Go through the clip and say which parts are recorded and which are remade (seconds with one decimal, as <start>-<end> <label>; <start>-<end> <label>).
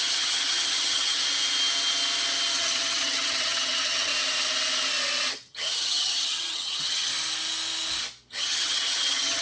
0.0-1.2 remade; 1.2-2.5 recorded; 2.5-4.1 remade; 4.1-5.3 recorded; 5.3-7.1 remade; 7.1-8.3 recorded; 8.3-9.4 remade